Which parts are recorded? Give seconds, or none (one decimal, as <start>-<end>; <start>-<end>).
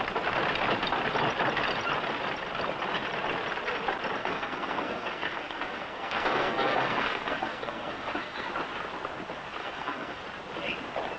0.0-4.2; 8.5-9.6; 10.2-11.2